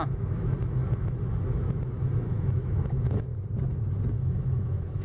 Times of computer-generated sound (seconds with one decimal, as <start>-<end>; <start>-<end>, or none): 0.0-3.3; 4.1-5.0